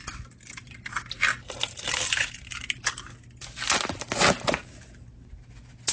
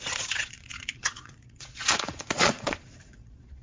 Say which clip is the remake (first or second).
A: second